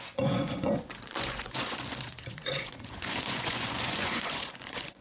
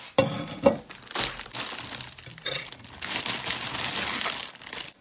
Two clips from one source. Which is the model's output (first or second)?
first